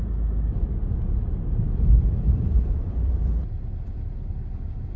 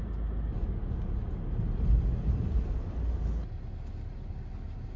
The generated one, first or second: first